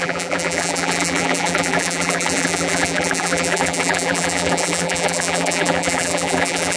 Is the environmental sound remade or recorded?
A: remade